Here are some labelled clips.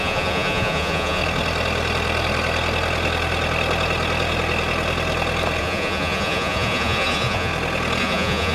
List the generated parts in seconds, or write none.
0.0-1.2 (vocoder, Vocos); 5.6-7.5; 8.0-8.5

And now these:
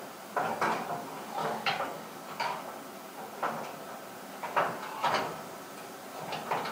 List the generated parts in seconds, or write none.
1.4-2.6 (codec, DAC)

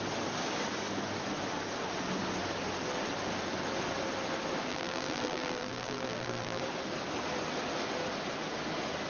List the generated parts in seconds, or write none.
4.7-6.6 (vocoder, BigVGAN v2)

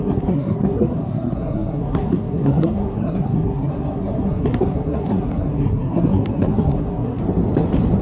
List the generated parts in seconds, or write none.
0.0-7.2 (codec, SNAC)

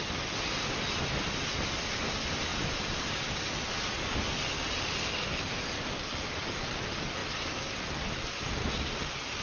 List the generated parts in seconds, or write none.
2.5-3.2 (vocoder, BigVGAN v2)

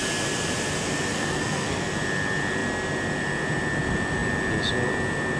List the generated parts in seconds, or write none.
1.1-1.8 (codec, SNAC)

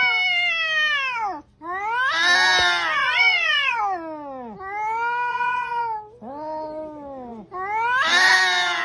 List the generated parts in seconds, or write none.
3.0-3.8 (vocoder, Vocos); 5.3-5.8

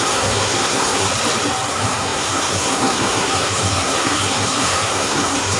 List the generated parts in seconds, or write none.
0.0-1.1 (codec, SNAC); 1.7-5.6